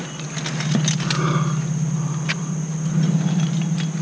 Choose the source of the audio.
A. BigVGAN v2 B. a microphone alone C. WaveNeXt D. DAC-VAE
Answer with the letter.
B